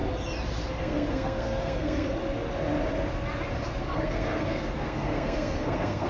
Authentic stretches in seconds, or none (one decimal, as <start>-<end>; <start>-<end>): 0.0-0.7; 2.2-3.8